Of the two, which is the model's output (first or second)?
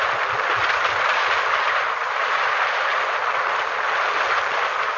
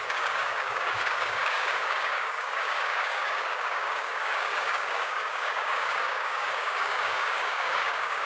second